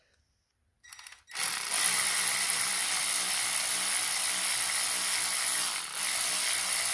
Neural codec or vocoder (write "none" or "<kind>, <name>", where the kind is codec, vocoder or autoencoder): none